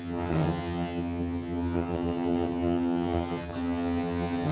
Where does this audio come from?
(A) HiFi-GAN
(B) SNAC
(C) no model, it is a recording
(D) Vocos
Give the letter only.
A